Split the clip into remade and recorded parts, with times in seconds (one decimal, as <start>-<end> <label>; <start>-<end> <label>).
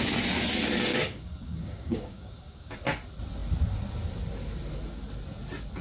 0.0-0.9 recorded; 0.9-2.7 remade; 2.7-5.8 recorded